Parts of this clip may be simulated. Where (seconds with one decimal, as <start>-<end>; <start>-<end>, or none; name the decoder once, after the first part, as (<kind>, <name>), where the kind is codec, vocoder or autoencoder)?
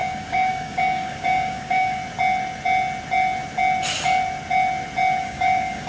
0.0-2.0 (codec, DAC); 5.2-5.9